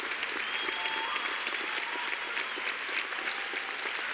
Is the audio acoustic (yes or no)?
yes